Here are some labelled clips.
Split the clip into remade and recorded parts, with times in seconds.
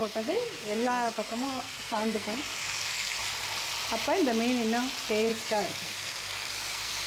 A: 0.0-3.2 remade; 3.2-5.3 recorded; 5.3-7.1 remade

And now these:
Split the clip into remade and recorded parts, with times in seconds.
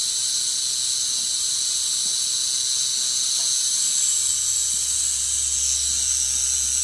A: 0.0-6.8 recorded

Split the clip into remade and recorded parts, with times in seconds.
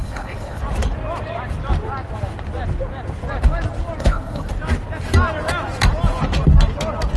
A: 0.0-0.6 remade; 0.6-4.0 recorded; 4.0-4.5 remade; 4.5-7.2 recorded